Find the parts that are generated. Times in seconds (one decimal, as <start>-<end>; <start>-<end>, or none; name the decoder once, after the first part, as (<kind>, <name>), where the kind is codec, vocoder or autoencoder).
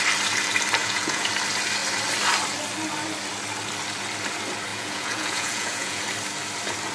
0.8-1.3 (vocoder, Vocos); 4.7-6.0